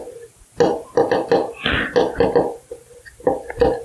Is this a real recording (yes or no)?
yes